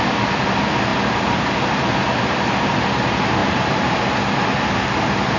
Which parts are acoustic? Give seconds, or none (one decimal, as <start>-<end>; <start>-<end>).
0.0-5.4